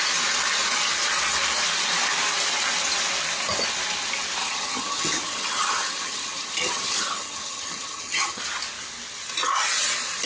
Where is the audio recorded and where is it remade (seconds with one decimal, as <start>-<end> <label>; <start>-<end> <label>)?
0.0-4.4 recorded; 4.4-8.4 remade; 8.4-10.3 recorded